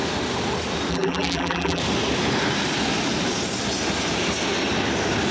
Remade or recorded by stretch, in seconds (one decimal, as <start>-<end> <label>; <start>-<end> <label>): 0.0-0.9 recorded; 0.9-1.8 remade; 1.8-5.3 recorded